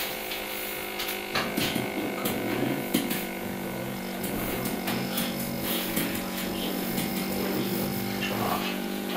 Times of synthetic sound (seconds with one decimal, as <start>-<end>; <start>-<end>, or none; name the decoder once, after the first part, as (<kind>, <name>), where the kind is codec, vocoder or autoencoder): 0.0-7.1 (vocoder, Vocos); 8.5-9.2